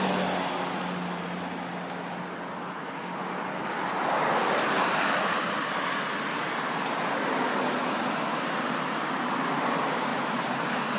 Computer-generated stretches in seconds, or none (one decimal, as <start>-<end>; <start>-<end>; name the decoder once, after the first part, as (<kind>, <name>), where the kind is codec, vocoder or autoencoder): 10.1-11.0 (vocoder, BigVGAN v2)